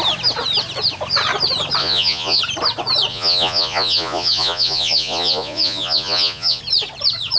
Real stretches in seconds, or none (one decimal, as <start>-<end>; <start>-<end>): 0.0-1.8; 2.4-3.1; 6.6-7.4